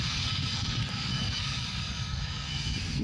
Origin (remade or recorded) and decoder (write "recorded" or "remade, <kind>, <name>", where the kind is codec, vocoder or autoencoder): remade, codec, SNAC